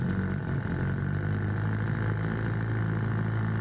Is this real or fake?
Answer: real